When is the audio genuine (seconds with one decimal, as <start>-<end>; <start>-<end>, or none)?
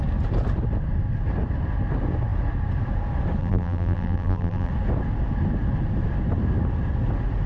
0.0-3.4; 4.7-7.5